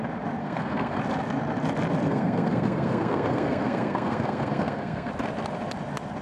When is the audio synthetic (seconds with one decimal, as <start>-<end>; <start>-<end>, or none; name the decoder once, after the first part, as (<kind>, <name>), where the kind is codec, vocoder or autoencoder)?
0.4-1.0 (codec, SNAC); 2.1-5.1